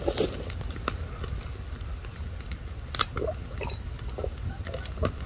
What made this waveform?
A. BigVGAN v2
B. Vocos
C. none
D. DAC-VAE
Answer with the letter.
C